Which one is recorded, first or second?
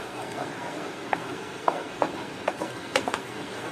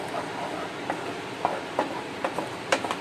second